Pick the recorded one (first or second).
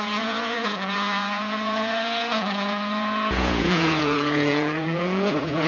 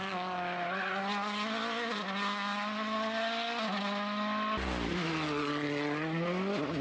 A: second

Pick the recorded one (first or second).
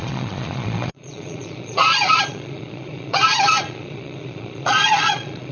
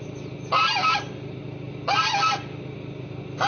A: second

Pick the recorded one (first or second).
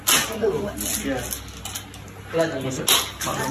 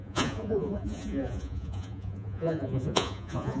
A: first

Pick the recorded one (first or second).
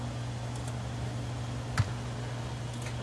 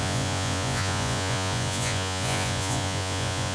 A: first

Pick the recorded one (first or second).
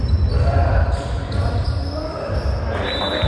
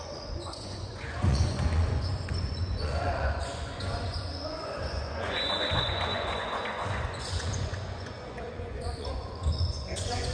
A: first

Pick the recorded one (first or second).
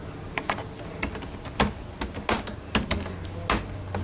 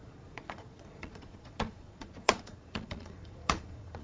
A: first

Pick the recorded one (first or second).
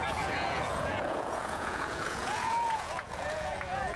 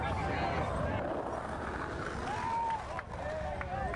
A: second